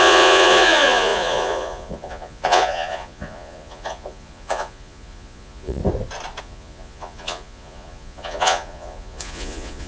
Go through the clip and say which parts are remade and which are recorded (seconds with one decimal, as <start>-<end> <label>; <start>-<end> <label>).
0.0-5.8 remade; 5.8-6.4 recorded; 6.4-9.9 remade